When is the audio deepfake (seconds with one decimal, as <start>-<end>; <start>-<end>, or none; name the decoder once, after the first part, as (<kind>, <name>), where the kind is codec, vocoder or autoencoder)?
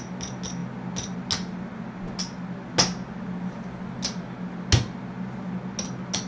none